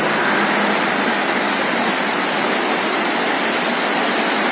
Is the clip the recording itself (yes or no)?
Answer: yes